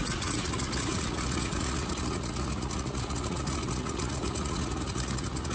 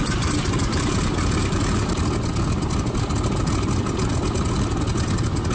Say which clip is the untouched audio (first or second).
second